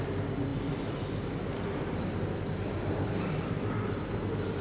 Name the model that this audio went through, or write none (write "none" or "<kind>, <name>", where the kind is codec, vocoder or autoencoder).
none